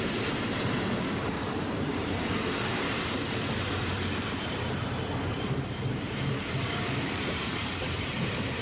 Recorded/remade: remade